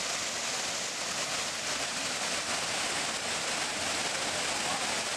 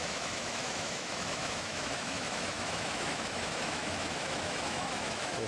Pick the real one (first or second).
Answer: first